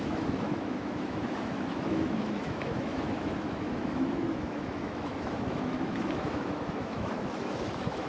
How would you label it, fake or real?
fake